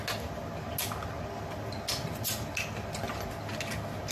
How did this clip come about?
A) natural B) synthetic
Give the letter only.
A